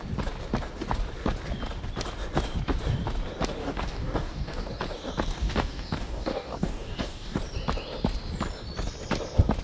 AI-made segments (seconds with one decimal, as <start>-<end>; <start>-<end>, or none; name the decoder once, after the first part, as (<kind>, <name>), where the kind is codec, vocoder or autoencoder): 3.6-4.7 (codec, DAC); 5.3-7.4

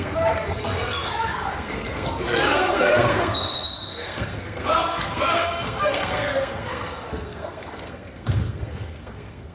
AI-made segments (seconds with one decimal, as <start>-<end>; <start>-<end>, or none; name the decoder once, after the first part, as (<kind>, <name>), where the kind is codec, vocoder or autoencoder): 0.0-9.5 (codec, SNAC)

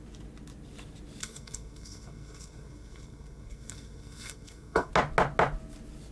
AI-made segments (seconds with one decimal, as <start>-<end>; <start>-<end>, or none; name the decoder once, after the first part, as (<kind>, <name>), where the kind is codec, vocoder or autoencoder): 1.2-4.9 (codec, SNAC)

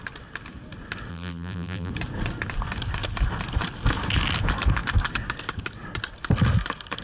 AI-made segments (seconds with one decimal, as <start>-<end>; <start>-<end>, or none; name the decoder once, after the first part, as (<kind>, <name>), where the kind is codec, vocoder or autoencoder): 1.1-1.9 (vocoder, BigVGAN v2)